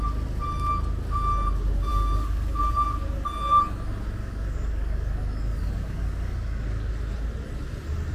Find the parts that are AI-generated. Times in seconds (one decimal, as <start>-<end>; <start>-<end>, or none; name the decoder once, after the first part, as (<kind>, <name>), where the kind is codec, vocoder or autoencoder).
1.9-2.6 (codec, DAC); 4.2-6.9